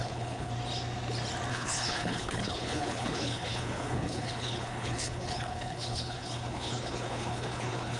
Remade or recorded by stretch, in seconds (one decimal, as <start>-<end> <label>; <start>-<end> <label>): 0.0-0.5 remade; 0.5-1.5 recorded; 1.5-8.0 remade